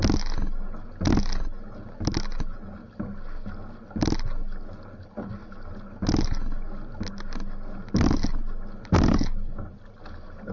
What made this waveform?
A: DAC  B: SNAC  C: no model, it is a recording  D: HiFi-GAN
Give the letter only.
C